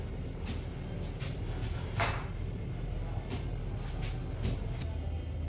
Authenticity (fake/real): real